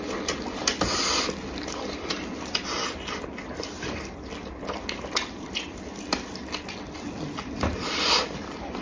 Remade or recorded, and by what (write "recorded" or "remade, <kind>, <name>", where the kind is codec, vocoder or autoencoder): recorded